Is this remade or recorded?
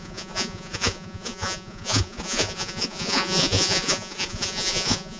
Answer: remade